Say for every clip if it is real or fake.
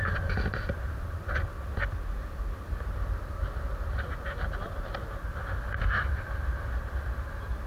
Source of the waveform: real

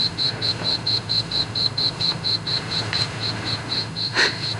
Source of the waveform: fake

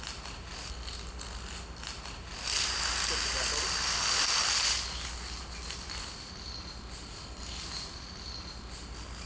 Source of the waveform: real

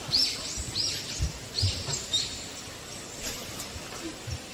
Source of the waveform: real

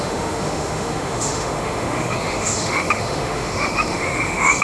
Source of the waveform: fake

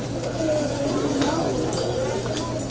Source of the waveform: real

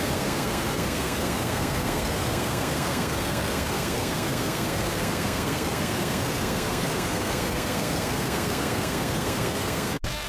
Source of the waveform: fake